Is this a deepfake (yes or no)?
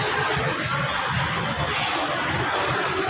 no